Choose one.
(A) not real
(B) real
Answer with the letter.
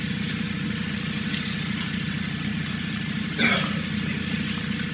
B